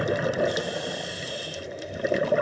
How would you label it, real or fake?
fake